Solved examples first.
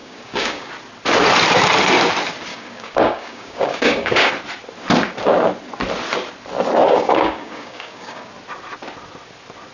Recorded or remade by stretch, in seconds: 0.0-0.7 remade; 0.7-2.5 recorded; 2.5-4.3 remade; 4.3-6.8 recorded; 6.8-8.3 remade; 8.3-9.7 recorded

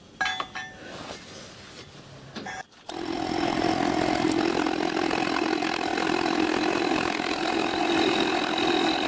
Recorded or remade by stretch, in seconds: 0.0-9.1 recorded

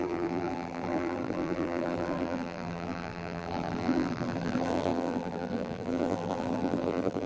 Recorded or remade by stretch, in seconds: 0.0-7.3 remade

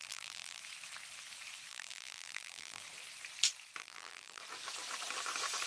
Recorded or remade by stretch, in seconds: 0.0-0.6 remade; 0.6-1.7 recorded; 1.7-2.8 remade; 2.8-3.8 recorded; 3.8-4.4 remade; 4.4-5.7 recorded

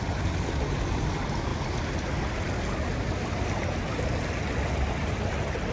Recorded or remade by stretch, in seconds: 0.0-5.7 recorded

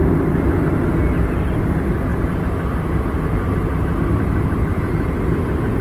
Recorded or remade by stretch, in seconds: 0.0-5.8 recorded

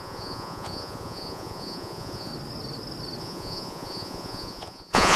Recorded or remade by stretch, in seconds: 0.0-2.3 remade; 2.3-3.2 recorded; 3.2-5.2 remade